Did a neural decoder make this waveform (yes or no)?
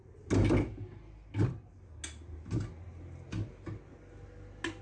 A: no